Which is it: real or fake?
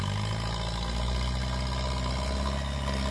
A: real